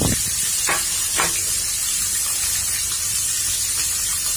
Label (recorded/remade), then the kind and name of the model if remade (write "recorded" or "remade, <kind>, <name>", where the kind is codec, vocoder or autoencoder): recorded